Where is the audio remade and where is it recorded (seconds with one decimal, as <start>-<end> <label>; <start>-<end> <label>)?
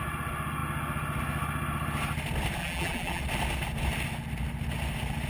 0.0-2.6 recorded; 2.6-3.2 remade; 3.2-5.3 recorded